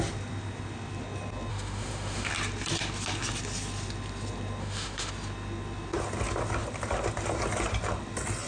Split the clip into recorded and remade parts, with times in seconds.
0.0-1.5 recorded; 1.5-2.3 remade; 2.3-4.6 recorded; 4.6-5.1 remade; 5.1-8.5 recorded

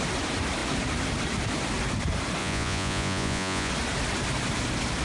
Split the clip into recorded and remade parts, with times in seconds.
0.0-2.4 recorded; 2.4-3.7 remade; 3.7-5.0 recorded

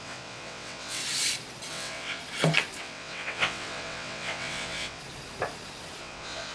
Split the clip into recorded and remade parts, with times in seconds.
0.0-1.0 remade; 1.0-1.7 recorded; 1.7-2.2 remade; 2.2-2.8 recorded; 2.8-5.0 remade; 5.0-6.0 recorded; 6.0-6.5 remade

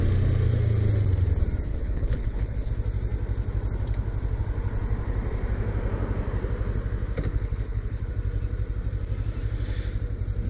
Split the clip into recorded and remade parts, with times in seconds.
0.0-1.7 recorded; 1.7-2.7 remade; 2.7-7.3 recorded; 7.3-8.1 remade; 8.1-10.5 recorded